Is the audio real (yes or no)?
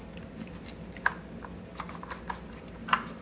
yes